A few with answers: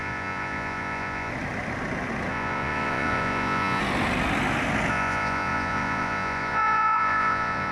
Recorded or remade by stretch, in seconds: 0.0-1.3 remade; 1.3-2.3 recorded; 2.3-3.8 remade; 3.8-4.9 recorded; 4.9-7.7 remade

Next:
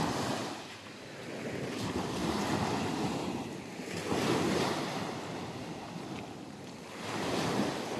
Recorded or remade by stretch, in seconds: 0.0-8.0 recorded

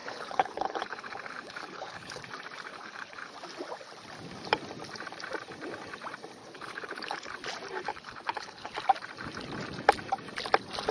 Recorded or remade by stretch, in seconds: 0.0-2.2 remade; 2.2-2.7 recorded; 2.7-3.3 remade; 3.3-6.4 recorded; 6.4-7.3 remade; 7.3-7.9 recorded; 7.9-8.7 remade; 8.7-10.9 recorded

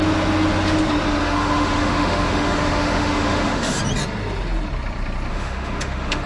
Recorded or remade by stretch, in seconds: 0.0-1.2 recorded; 1.2-3.8 remade; 3.8-5.3 recorded; 5.3-6.3 remade

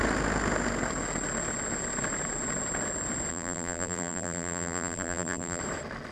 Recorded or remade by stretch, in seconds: 0.0-3.3 recorded; 3.3-5.6 remade; 5.6-6.1 recorded

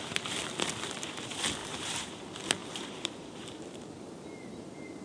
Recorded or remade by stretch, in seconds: 0.0-1.6 recorded; 1.6-2.1 remade; 2.1-2.6 recorded; 2.6-3.7 remade; 3.7-5.0 recorded

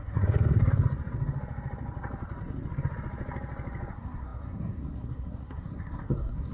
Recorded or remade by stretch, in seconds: 0.0-0.6 remade; 0.6-3.9 recorded; 3.9-6.5 remade